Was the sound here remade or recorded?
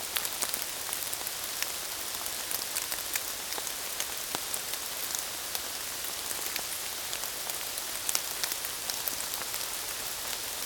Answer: recorded